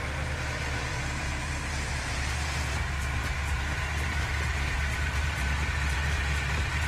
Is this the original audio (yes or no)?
no